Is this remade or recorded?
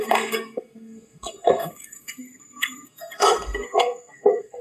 remade